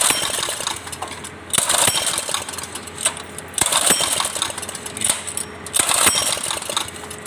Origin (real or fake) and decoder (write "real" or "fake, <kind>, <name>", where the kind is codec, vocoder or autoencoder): real